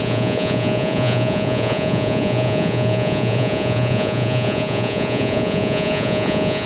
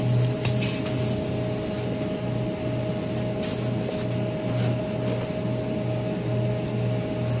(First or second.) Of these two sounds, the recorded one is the second